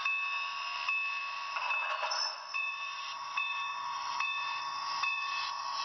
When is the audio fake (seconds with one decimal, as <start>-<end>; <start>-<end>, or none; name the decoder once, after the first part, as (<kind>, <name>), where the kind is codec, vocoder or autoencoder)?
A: 1.9-5.8 (vocoder, Vocos)